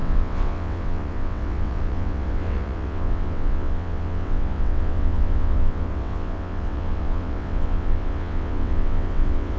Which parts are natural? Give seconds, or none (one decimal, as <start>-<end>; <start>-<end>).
none